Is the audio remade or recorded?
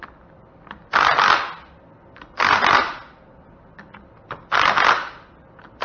recorded